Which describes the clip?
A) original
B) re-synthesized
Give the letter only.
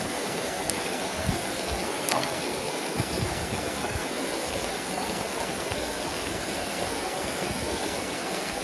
B